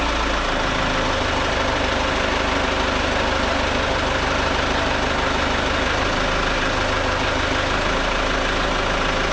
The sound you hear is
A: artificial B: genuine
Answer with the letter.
B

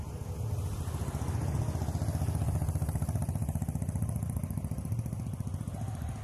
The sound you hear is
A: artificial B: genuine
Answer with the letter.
B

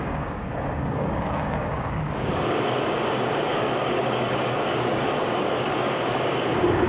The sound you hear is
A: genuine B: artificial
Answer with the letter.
B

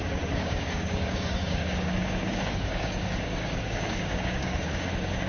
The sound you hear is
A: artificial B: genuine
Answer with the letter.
A